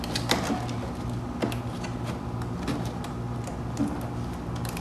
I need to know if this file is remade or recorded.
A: recorded